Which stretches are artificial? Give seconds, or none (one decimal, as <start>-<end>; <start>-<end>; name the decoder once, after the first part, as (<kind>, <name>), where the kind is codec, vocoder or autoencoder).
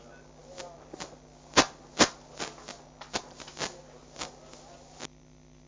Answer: none